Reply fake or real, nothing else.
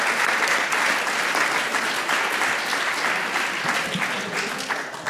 real